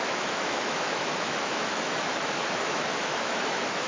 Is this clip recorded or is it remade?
remade